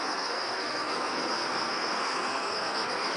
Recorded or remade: remade